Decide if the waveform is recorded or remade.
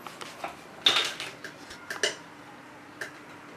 recorded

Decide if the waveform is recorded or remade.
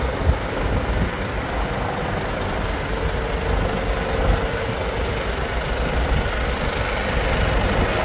recorded